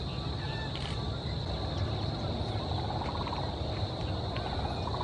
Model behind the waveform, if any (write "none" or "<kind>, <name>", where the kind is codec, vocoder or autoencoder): none